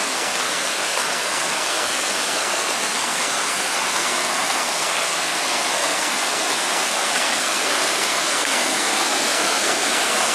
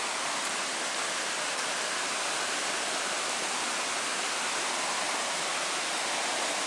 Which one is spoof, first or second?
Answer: first